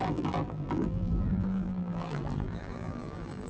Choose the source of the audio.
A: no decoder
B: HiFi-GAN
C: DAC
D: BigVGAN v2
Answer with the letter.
D